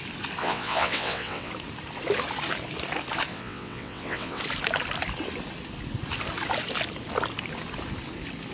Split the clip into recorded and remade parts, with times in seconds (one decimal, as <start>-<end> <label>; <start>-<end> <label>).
0.0-0.4 recorded; 0.4-1.5 remade; 1.5-3.3 recorded; 3.3-4.4 remade; 4.4-8.5 recorded